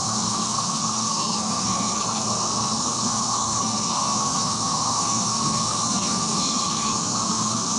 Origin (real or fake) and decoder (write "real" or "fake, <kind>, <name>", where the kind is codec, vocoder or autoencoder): fake, codec, SNAC